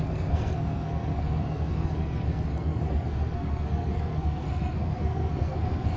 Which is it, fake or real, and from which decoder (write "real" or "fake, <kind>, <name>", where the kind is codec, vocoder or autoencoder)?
fake, codec, SNAC